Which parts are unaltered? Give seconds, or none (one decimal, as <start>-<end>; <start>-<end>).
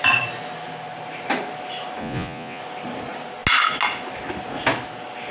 0.0-2.0; 2.6-5.3